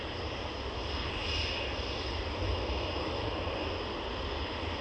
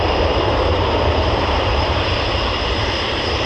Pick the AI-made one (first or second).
second